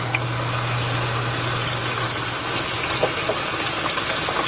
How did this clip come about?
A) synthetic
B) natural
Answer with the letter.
B